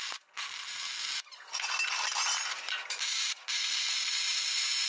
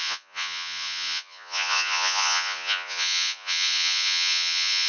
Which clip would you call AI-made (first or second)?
second